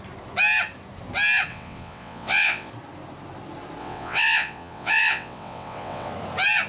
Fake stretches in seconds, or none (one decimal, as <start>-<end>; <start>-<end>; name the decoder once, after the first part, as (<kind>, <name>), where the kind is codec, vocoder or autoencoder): 1.5-2.7 (vocoder, WaveNeXt); 3.8-6.1